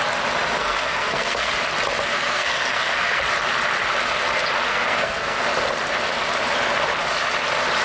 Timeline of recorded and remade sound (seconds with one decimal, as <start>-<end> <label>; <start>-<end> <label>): 0.0-0.6 recorded; 0.6-1.5 remade; 1.5-2.1 recorded; 2.1-3.2 remade; 3.2-4.7 recorded; 4.7-5.4 remade; 5.4-7.8 recorded